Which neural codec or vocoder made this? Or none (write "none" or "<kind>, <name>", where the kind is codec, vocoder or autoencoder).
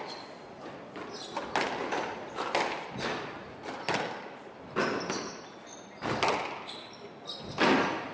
none